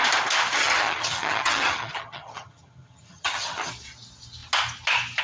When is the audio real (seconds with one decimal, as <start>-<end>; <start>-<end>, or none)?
0.0-0.6; 3.7-5.2